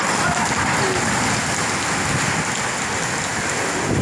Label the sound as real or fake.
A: real